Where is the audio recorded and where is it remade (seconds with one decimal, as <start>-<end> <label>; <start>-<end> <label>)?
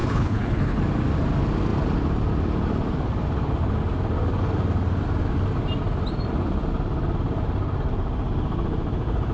0.0-0.8 remade; 0.8-9.3 recorded